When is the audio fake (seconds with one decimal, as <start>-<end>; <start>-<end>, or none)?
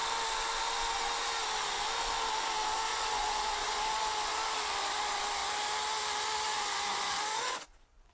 2.9-4.3; 6.9-8.1